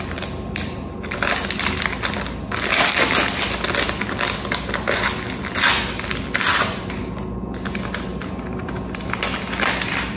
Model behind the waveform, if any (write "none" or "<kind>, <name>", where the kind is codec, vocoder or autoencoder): none